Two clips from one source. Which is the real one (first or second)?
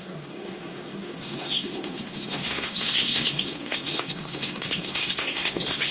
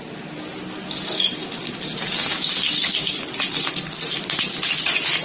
second